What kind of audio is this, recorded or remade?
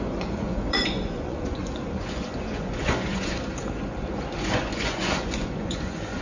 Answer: remade